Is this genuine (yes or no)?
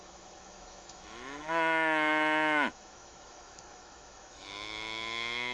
no